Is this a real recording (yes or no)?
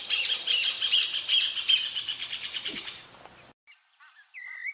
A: yes